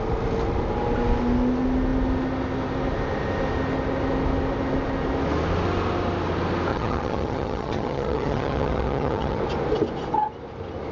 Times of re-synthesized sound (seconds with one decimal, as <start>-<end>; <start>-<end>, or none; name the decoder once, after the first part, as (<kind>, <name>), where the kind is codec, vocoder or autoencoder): 6.7-9.4 (vocoder, HiFi-GAN)